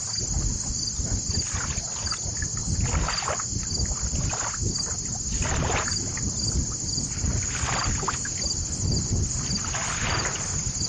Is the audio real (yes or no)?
yes